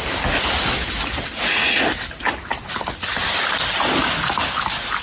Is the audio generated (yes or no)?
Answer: no